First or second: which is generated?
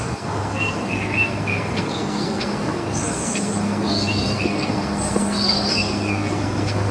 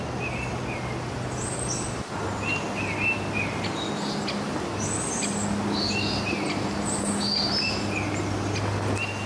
first